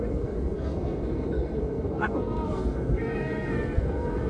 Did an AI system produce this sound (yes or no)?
yes